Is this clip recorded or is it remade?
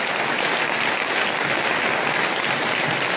recorded